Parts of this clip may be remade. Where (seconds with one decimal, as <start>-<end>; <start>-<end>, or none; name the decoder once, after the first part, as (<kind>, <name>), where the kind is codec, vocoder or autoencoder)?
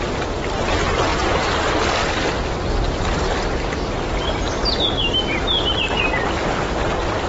none